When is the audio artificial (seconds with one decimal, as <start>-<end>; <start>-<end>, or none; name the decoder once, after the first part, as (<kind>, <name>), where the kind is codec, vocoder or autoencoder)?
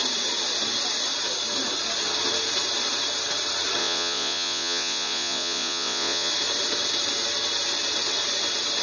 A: 3.8-6.3 (vocoder, Vocos)